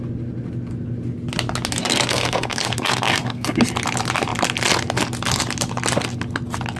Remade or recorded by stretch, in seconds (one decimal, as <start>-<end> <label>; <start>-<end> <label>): 0.0-1.8 recorded; 1.8-3.6 remade; 3.6-6.8 recorded